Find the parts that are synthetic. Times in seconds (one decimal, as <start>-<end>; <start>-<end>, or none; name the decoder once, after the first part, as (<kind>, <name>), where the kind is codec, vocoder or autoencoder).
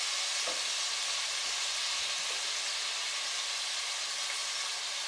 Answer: none